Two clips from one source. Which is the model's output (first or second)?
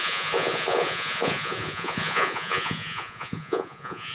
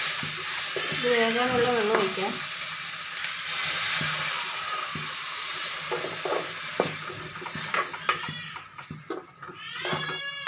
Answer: first